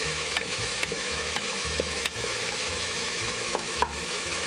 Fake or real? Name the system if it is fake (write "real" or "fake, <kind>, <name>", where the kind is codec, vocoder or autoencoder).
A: fake, autoencoder, DAC-VAE